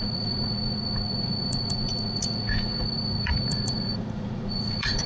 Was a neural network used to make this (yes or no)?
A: yes